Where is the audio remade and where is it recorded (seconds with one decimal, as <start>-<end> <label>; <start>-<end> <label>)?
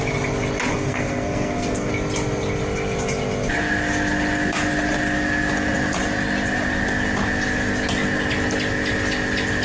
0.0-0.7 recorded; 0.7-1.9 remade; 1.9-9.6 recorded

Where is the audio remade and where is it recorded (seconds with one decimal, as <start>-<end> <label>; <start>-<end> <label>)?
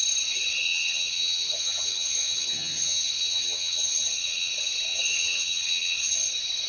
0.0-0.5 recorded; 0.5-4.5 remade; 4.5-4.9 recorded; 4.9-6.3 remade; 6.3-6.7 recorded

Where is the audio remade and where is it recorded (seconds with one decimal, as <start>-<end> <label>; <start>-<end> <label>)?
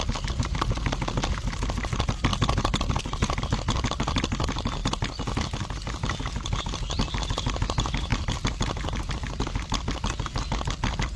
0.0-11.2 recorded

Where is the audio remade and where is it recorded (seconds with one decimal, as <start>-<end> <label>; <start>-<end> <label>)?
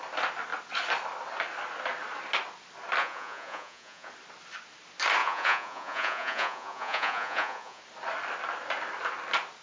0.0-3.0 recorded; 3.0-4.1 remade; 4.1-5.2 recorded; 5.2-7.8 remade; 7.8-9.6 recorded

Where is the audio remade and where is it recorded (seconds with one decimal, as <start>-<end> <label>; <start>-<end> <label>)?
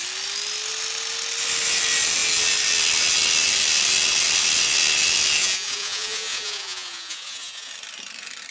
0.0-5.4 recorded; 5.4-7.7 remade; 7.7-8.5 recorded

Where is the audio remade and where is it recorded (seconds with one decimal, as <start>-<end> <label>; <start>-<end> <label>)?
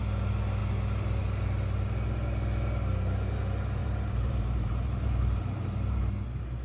0.0-3.8 recorded; 3.8-6.0 remade; 6.0-6.6 recorded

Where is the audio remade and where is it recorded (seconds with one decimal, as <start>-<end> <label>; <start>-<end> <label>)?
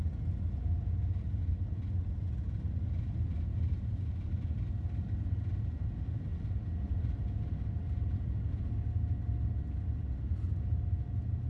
0.0-11.5 recorded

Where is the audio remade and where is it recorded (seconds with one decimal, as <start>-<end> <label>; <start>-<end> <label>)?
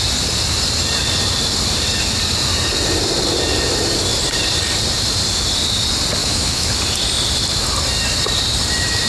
0.0-6.2 recorded; 6.2-6.7 remade; 6.7-9.1 recorded